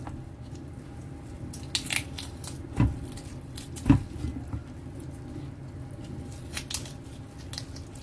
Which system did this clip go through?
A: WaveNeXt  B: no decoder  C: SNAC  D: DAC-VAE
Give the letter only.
B